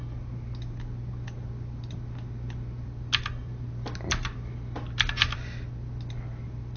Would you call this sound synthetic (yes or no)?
no